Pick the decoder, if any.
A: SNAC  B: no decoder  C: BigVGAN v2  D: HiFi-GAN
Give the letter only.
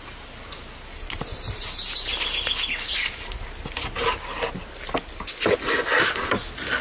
B